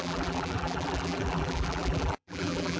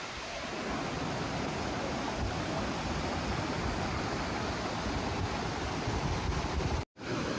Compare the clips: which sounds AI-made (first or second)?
first